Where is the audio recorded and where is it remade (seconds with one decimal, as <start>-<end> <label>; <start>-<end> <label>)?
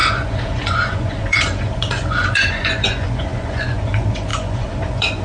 0.0-5.2 remade